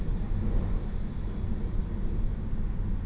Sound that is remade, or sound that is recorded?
recorded